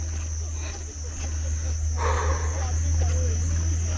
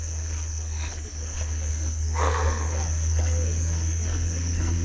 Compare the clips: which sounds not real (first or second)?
second